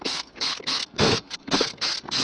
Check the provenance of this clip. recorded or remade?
remade